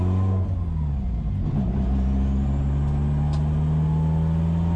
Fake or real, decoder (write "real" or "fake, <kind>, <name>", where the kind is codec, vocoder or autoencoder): real